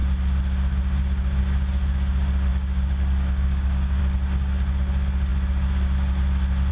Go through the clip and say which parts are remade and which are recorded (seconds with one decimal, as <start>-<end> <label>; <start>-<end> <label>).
0.0-2.5 recorded; 2.5-4.0 remade; 4.0-6.7 recorded